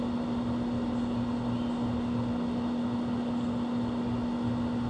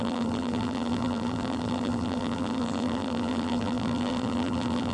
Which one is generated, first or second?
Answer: second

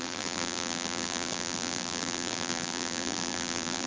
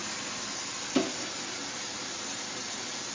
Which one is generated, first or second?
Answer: first